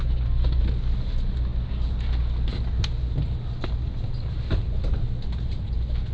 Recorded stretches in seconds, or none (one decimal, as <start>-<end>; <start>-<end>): 0.0-6.1

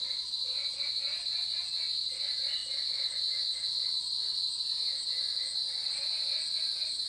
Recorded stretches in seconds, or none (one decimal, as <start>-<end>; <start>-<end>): 0.0-7.1

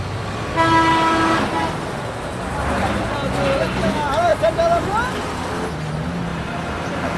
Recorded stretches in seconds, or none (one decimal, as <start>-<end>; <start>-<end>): 0.0-6.3

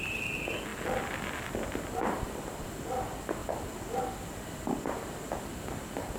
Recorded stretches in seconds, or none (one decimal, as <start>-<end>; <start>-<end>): 0.7-2.6; 3.4-5.1

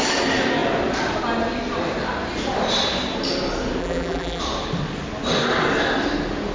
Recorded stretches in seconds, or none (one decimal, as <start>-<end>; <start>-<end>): 0.0-3.8; 4.4-6.5

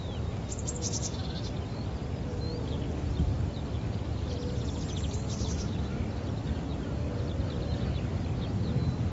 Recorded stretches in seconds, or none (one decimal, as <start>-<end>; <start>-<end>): 0.0-9.1

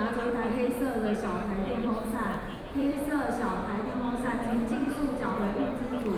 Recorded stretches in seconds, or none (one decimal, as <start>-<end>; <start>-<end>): 0.0-1.6; 5.3-6.2

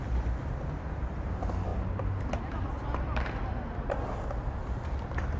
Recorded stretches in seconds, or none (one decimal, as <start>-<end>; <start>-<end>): 0.0-1.7; 2.5-5.4